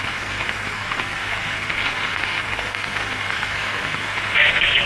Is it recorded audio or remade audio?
remade